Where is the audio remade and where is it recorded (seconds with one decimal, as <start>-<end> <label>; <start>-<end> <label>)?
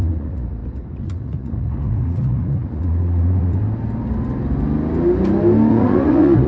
0.0-3.6 remade; 3.6-5.7 recorded; 5.7-6.5 remade